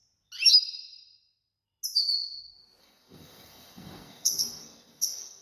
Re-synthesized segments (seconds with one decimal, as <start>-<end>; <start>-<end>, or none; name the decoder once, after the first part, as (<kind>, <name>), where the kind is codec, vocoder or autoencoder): 2.8-5.4 (codec, SNAC)